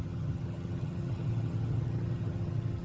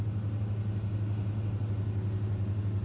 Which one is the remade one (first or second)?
first